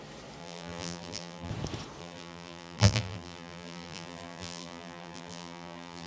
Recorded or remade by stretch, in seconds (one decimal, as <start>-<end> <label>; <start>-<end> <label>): 0.0-0.4 recorded; 0.4-1.5 remade; 1.5-2.0 recorded; 2.0-6.1 remade